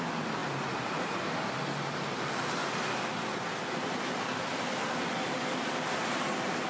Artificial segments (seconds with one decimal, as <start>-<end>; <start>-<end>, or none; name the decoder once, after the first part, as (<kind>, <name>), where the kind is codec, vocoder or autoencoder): none